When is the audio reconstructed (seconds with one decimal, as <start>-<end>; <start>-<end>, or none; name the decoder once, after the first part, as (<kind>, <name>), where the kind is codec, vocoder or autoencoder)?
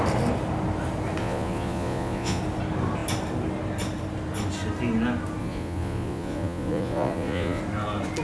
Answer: 1.2-2.4 (vocoder, Vocos); 5.4-7.6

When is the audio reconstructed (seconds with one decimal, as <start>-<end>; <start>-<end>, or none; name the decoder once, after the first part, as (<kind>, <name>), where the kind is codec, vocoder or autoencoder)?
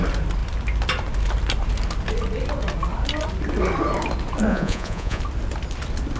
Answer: 4.5-5.2 (vocoder, Vocos)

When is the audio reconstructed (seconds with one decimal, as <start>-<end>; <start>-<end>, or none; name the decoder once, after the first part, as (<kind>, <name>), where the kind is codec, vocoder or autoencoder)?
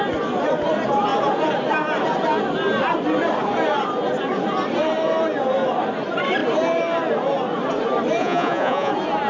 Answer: 8.2-8.9 (vocoder, Vocos)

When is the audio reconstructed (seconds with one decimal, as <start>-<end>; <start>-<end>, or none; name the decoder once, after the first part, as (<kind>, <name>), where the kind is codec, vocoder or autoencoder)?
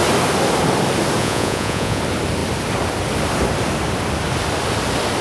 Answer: 1.2-2.0 (vocoder, Vocos)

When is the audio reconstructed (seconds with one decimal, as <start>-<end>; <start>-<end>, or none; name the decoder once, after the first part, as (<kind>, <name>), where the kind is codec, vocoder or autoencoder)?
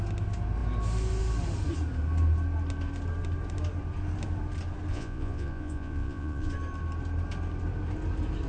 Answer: 4.9-6.5 (vocoder, Vocos)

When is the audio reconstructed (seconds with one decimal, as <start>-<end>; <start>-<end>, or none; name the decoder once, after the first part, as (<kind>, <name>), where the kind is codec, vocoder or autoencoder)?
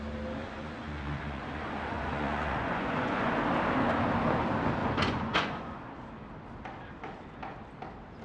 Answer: 0.4-3.3 (vocoder, Vocos); 4.8-5.8